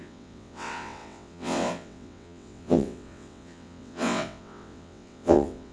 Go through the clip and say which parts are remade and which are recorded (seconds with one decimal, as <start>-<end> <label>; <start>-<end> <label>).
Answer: 0.0-5.7 remade